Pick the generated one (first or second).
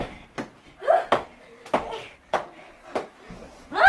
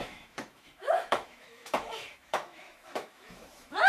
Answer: second